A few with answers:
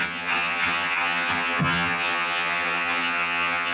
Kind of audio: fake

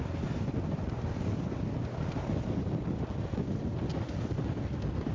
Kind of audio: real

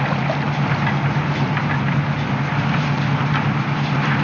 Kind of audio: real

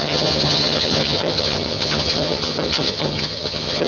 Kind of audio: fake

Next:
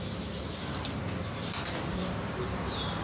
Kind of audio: real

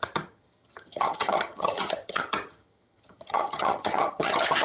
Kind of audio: fake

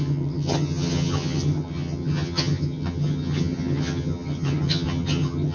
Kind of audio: fake